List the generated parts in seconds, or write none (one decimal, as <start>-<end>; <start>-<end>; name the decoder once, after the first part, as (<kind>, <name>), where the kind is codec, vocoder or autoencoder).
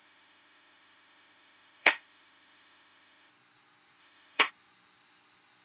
0.0-3.3 (autoencoder, DAC-VAE); 4.0-4.5